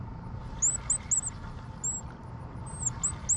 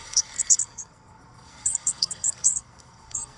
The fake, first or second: second